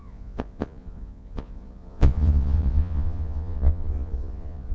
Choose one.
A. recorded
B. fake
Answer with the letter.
B